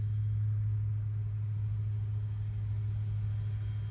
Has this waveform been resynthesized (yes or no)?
no